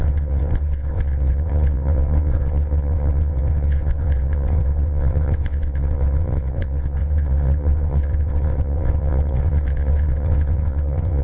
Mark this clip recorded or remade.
remade